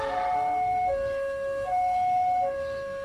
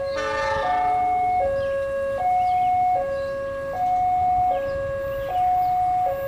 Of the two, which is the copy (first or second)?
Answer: first